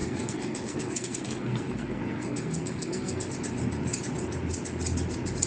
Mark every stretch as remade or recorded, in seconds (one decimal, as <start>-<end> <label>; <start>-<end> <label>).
0.0-3.3 remade; 3.3-5.5 recorded

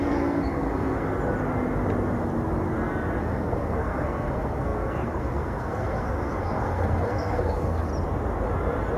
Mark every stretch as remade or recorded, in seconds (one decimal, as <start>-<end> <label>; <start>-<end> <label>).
0.0-1.1 remade; 1.1-3.2 recorded; 3.2-7.9 remade; 7.9-9.0 recorded

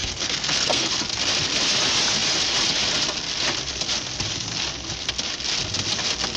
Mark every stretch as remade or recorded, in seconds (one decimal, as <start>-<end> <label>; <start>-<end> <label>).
0.0-0.9 remade; 0.9-6.4 recorded

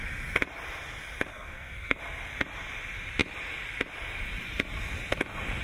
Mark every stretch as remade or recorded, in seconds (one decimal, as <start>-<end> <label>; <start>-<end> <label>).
0.0-1.3 recorded; 1.3-2.0 remade; 2.0-5.6 recorded

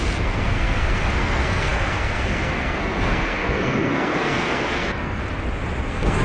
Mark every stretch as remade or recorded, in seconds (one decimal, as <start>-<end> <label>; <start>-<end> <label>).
0.0-5.2 remade; 5.2-5.8 recorded; 5.8-6.2 remade

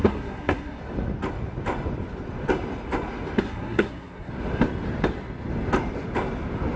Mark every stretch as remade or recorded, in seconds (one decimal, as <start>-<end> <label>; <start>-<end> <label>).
0.0-0.8 remade; 0.8-3.4 recorded; 3.4-4.3 remade; 4.3-6.8 recorded

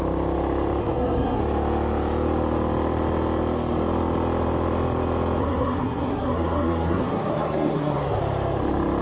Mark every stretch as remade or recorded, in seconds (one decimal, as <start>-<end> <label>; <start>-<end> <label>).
0.0-0.8 recorded; 0.8-1.4 remade; 1.4-5.4 recorded; 5.4-8.2 remade; 8.2-9.0 recorded